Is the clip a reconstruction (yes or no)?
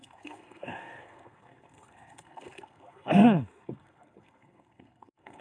yes